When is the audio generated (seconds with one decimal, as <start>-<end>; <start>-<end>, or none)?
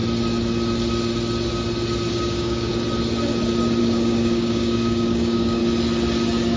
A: 2.1-2.7; 3.8-5.6